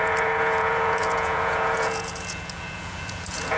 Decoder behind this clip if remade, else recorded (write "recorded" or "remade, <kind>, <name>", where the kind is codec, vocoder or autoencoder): remade, vocoder, Vocos